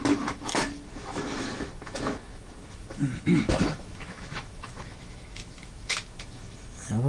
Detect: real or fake fake